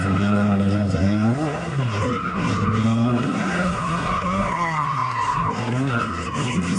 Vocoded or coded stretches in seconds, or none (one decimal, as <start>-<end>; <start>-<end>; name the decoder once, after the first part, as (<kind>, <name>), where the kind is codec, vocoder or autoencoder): 0.0-6.8 (codec, SNAC)